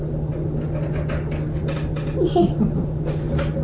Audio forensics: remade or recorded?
recorded